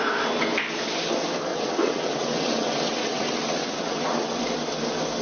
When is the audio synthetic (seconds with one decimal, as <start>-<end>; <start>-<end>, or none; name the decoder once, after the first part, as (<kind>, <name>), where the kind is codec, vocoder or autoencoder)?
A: 1.5-4.4 (vocoder, WaveNeXt)